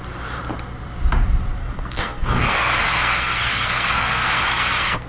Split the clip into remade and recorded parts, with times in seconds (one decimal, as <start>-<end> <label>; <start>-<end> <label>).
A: 0.0-1.6 recorded; 1.6-5.1 remade